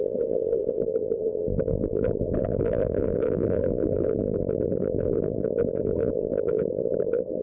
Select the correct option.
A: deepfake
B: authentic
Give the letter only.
A